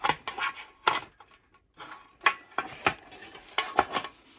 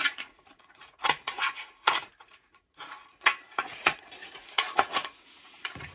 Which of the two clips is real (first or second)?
first